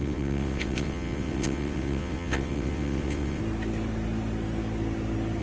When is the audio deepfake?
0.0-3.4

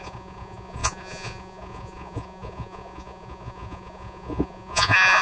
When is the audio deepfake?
0.0-5.2

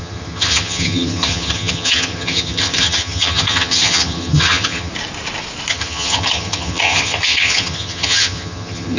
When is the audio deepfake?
0.0-4.9; 5.7-9.0

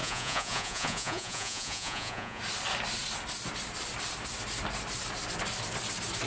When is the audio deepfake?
0.0-2.4

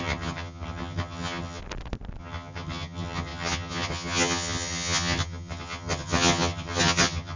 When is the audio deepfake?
0.0-1.6; 2.2-7.4

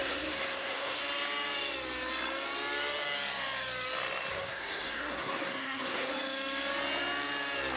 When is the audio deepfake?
0.0-1.0; 4.3-6.1